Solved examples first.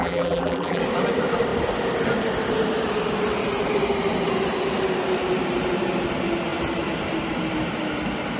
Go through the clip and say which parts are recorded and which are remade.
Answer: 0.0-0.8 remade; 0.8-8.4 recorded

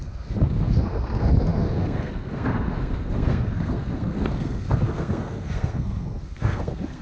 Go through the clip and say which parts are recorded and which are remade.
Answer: 0.0-7.0 remade

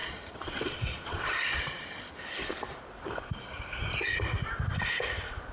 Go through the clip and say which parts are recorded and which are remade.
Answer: 0.0-2.1 remade; 2.1-5.5 recorded

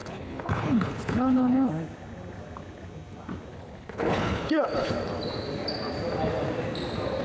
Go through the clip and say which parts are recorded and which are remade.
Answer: 0.0-1.7 remade; 1.7-3.5 recorded; 3.5-4.9 remade; 4.9-7.2 recorded

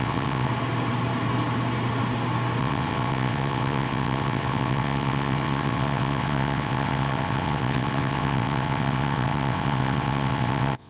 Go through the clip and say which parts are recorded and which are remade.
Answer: 0.0-0.5 remade; 0.5-2.6 recorded; 2.6-10.9 remade

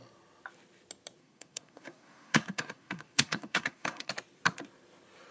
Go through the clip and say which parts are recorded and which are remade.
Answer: 0.0-1.2 recorded; 1.2-4.1 remade; 4.1-5.3 recorded

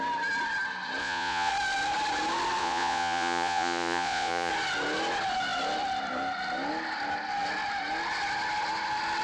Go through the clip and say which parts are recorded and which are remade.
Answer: 0.0-1.0 recorded; 1.0-1.5 remade; 1.5-2.6 recorded; 2.6-4.5 remade; 4.5-9.2 recorded